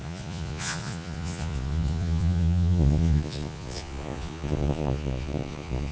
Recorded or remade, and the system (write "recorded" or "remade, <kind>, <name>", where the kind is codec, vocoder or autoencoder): remade, vocoder, Vocos